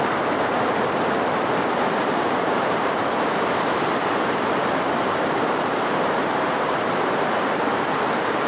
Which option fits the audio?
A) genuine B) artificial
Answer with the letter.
B